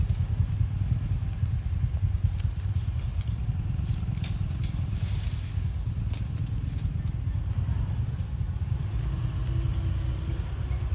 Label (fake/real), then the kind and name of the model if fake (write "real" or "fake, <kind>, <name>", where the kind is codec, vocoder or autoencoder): real